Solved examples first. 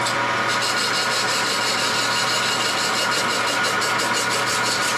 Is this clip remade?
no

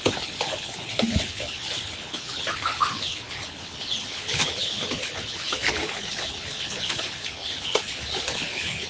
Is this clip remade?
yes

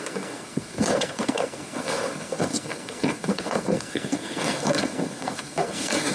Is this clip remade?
yes